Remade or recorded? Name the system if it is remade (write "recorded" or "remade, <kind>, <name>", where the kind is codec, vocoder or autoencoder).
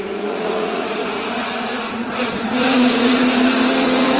remade, vocoder, Vocos